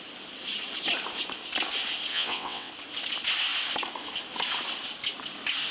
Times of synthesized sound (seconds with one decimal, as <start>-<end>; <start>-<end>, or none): 2.1-2.7